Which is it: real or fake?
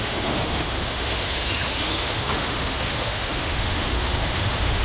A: fake